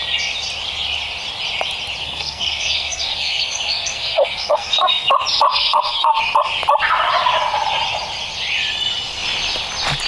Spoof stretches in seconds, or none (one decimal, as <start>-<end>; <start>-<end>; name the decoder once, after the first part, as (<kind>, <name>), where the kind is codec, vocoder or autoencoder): 2.0-5.1 (codec, SNAC); 5.5-6.2